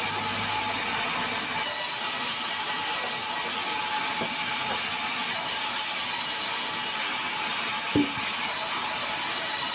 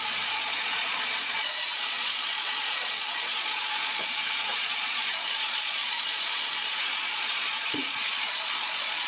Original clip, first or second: first